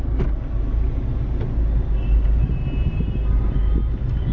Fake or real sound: real